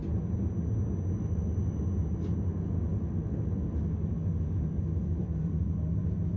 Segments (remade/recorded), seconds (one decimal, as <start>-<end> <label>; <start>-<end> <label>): 0.0-6.4 recorded